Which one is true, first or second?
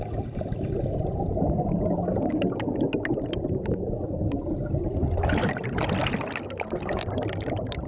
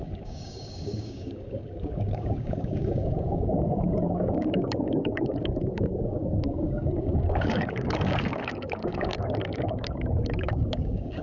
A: first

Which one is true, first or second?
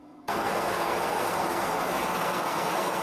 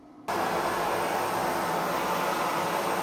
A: second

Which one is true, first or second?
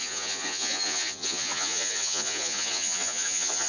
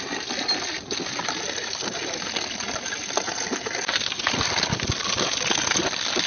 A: second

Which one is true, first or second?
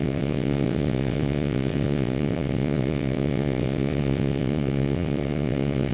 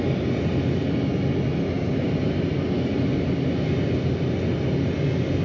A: second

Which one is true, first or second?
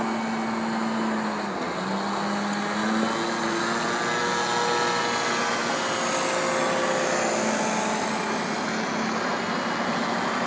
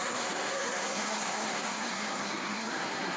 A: first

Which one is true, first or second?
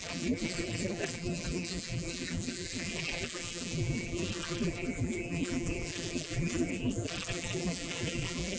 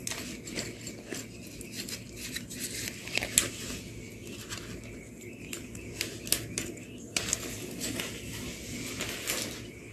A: second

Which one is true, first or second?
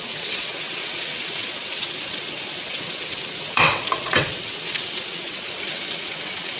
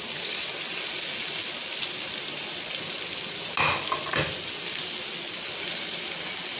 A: second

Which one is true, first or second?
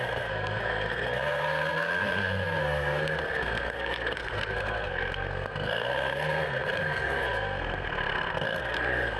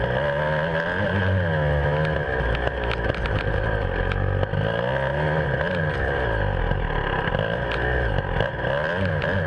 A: second